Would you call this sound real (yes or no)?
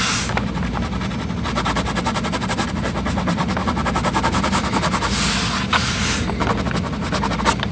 yes